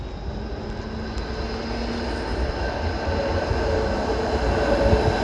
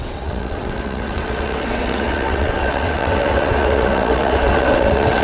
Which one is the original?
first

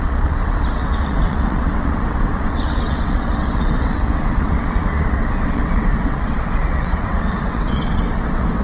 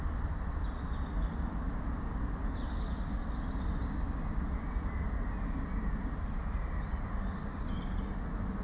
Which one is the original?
second